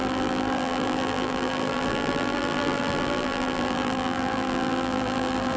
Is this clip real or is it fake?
fake